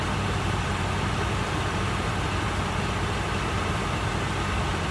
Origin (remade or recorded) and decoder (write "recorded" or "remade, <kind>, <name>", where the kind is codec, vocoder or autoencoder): remade, vocoder, BigVGAN v2